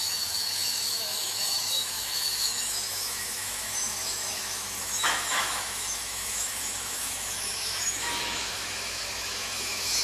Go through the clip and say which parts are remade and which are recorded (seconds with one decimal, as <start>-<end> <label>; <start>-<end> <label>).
0.0-10.0 remade